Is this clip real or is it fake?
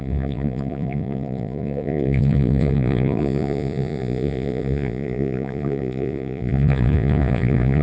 fake